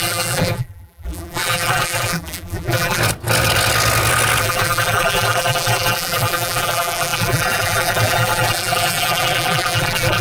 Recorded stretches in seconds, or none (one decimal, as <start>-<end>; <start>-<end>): 3.0-4.4